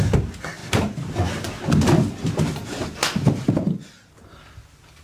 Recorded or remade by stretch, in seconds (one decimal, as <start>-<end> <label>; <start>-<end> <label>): 0.0-5.0 recorded